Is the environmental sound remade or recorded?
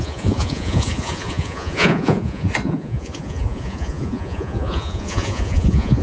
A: remade